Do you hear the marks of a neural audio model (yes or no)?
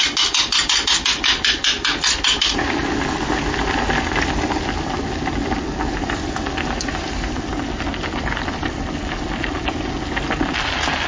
no